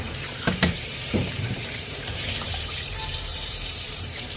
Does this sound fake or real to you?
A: fake